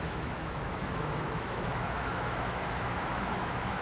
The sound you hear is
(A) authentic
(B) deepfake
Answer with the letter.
B